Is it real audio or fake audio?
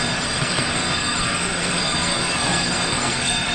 fake